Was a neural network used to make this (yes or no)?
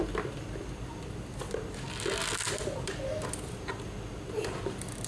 no